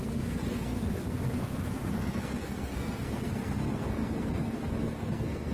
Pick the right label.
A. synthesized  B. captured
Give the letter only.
A